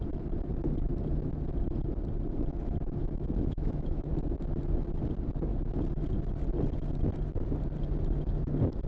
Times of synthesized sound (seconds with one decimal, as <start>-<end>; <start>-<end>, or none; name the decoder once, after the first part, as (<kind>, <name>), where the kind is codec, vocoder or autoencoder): 3.0-4.1 (autoencoder, DAC-VAE)